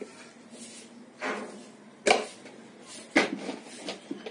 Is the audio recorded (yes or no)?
yes